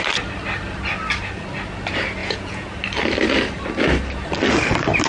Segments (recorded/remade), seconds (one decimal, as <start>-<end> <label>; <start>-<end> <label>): 0.0-2.2 recorded; 2.2-2.7 remade; 2.7-5.1 recorded